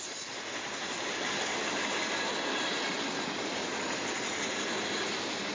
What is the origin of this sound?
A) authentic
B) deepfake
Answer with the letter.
A